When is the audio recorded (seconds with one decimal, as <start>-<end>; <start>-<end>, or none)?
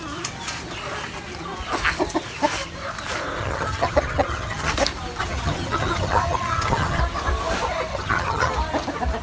0.0-3.4; 4.7-5.2; 7.0-7.9; 8.5-9.2